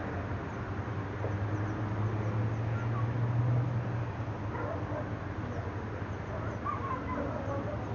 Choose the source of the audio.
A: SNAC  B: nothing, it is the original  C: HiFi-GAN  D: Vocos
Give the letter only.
B